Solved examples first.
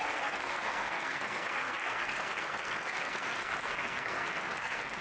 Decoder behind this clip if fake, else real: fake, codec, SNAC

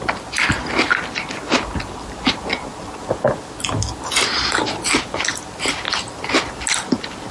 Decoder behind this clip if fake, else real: real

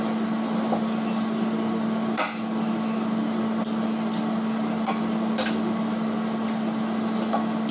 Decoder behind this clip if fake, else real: real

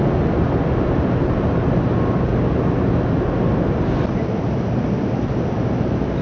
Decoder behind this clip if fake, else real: real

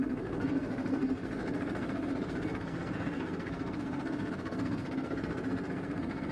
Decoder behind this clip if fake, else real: fake, codec, SNAC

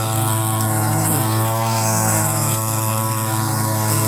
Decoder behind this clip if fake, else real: fake, codec, SNAC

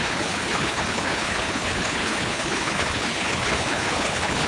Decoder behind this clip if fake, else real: fake, codec, HILCodec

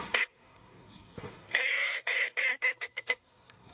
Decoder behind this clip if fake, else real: fake, codec, SNAC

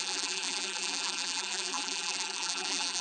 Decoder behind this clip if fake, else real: fake, vocoder, BigVGAN v2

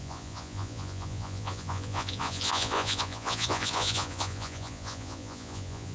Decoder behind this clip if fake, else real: fake, vocoder, Vocos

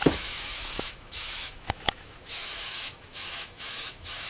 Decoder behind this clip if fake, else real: fake, autoencoder, DAC-VAE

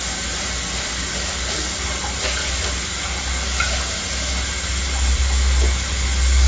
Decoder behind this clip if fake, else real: real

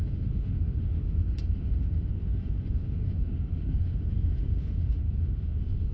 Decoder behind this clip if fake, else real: fake, autoencoder, DAC-VAE